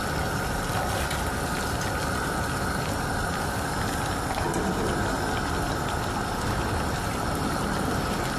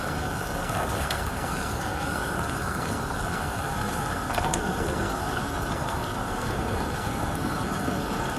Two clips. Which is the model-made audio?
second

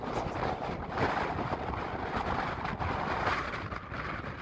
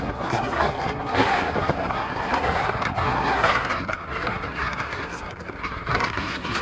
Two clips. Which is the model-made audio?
second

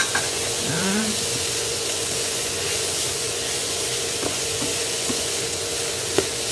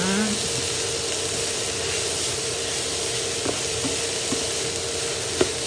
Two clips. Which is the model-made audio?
first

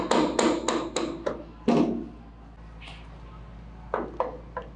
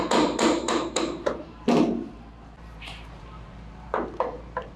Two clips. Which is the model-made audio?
second